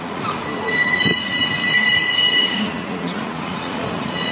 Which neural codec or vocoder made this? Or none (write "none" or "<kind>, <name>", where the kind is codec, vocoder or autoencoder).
vocoder, Vocos